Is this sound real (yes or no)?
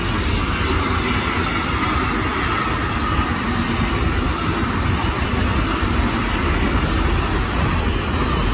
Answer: yes